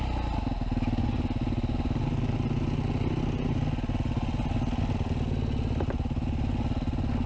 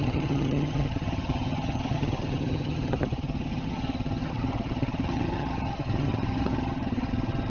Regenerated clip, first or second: second